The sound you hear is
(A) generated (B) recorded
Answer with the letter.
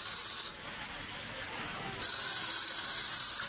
B